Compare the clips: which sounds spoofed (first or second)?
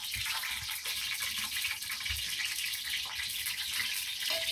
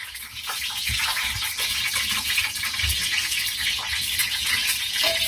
second